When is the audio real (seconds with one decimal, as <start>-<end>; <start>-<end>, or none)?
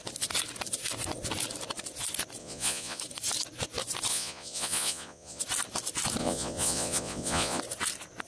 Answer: 0.0-2.4; 3.0-4.1; 5.4-6.2; 7.6-8.3